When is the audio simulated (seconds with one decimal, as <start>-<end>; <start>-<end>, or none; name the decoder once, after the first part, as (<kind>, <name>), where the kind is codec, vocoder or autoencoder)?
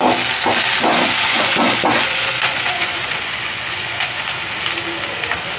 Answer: 0.9-4.3 (vocoder, Vocos)